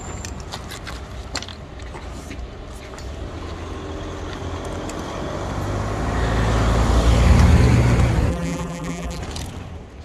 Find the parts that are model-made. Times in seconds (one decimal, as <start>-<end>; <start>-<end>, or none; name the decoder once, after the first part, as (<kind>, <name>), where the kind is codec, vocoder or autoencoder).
8.3-9.2 (vocoder, BigVGAN v2)